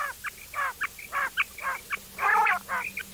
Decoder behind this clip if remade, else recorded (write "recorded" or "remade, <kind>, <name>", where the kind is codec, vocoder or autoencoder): recorded